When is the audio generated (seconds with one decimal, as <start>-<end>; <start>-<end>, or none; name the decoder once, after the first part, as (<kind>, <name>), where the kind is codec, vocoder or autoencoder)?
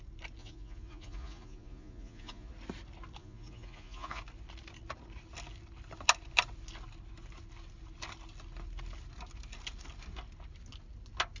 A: 0.4-2.5 (vocoder, Vocos); 3.2-4.2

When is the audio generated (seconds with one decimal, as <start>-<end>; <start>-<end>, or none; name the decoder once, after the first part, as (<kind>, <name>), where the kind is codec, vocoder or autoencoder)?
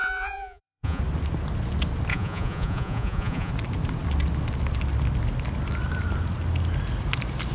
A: 0.0-1.0 (vocoder, Vocos); 2.1-3.5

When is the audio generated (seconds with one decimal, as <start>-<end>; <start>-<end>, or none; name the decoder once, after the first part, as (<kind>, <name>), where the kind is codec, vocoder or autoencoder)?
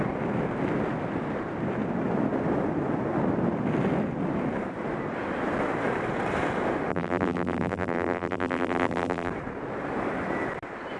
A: 6.9-9.3 (vocoder, BigVGAN v2)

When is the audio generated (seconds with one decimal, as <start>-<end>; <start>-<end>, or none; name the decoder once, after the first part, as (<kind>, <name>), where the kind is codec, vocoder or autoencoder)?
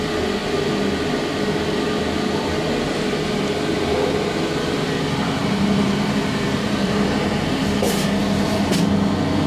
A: 5.4-7.6 (vocoder, BigVGAN v2)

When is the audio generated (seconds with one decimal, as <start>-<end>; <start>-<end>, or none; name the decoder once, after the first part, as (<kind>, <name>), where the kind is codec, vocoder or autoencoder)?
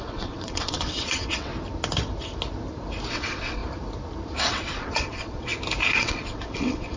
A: 0.0-1.5 (vocoder, WaveNeXt); 3.1-3.6; 4.4-5.5; 6.0-7.0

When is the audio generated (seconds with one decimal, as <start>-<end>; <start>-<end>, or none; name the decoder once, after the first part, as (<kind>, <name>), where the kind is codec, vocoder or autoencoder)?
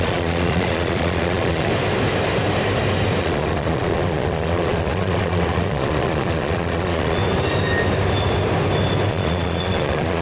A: 0.0-1.7 (vocoder, Vocos); 3.2-7.2; 9.1-10.2